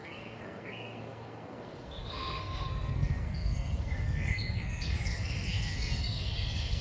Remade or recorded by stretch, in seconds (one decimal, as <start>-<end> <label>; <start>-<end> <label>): 0.0-6.8 remade